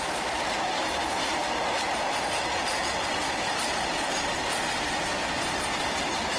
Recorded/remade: recorded